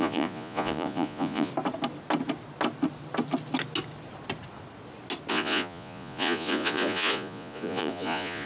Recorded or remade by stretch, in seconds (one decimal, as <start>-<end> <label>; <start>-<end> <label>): 0.0-1.5 remade; 1.5-5.3 recorded; 5.3-8.5 remade